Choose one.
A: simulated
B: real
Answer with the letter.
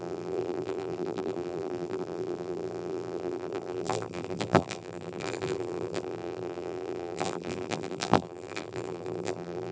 A